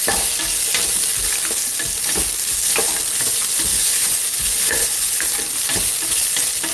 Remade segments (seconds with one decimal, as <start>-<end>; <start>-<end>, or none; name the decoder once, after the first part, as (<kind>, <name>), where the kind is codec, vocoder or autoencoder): 3.7-5.3 (vocoder, Vocos)